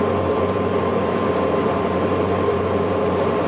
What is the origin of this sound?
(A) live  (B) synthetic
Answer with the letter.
B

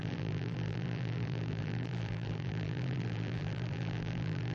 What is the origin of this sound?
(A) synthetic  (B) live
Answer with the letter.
A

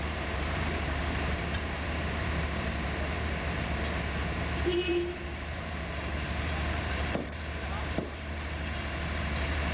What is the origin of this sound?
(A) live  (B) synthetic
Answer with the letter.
B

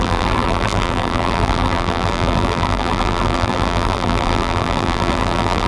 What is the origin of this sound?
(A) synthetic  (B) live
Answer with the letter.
A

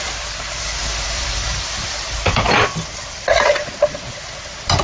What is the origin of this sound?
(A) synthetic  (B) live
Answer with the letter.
A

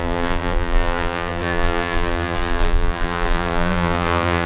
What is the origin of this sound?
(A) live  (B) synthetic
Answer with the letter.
B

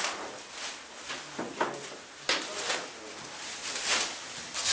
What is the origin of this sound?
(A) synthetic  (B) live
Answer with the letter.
B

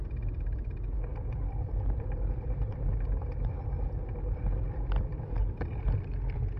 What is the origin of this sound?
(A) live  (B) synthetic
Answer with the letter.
B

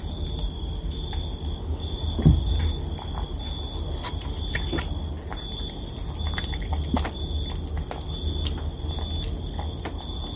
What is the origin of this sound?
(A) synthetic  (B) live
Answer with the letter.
B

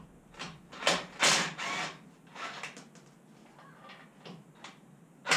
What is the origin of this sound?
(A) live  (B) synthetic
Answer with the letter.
A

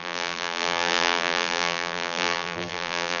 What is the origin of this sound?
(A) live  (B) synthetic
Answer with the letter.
B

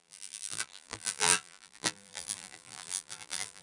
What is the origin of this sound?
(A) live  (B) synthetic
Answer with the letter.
B